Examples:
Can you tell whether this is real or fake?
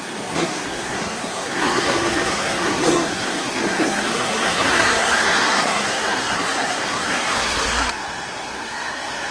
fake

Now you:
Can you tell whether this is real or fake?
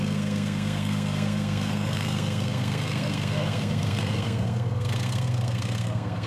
fake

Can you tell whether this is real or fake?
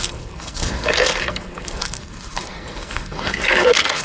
fake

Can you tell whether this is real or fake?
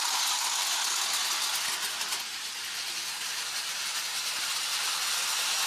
real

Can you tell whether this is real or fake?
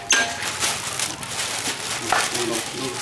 real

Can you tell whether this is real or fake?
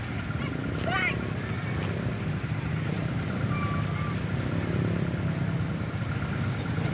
real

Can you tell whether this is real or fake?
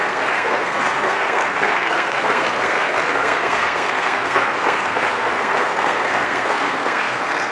fake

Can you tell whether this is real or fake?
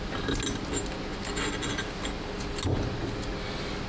real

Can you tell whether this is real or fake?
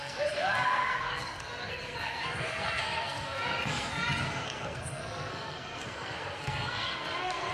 fake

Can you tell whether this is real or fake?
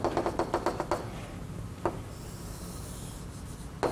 real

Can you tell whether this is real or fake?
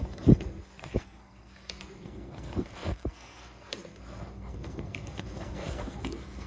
fake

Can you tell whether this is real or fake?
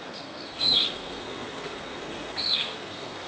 fake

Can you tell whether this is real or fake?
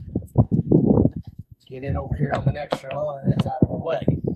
fake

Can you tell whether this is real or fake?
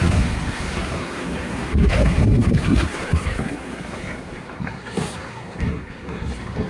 fake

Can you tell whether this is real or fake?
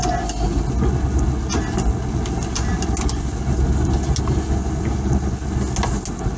real